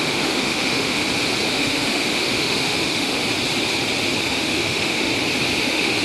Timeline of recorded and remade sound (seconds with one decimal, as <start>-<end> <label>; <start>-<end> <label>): 0.0-1.0 remade; 1.0-1.5 recorded; 1.5-3.2 remade; 3.2-4.2 recorded; 4.2-5.1 remade; 5.1-5.6 recorded; 5.6-6.0 remade

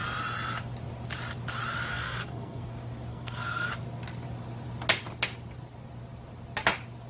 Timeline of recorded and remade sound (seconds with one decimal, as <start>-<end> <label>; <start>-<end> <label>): 0.0-1.9 recorded; 1.9-2.7 remade; 2.7-3.1 recorded; 3.1-3.7 remade; 3.7-7.1 recorded

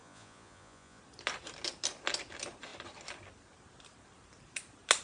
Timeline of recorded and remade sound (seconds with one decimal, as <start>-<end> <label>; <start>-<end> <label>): 0.0-1.0 remade; 1.0-5.0 recorded

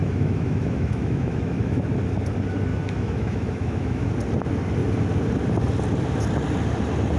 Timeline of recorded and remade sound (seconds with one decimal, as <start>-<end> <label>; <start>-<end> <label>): 0.0-1.8 remade; 1.8-2.7 recorded; 2.7-4.1 remade; 4.1-7.2 recorded